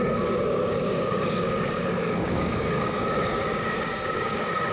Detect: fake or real fake